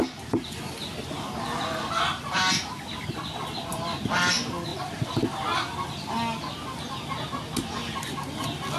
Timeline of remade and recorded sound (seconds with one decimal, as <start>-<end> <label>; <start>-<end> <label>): 0.0-8.8 recorded